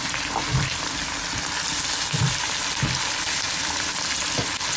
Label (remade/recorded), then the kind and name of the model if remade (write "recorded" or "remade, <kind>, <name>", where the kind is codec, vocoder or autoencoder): recorded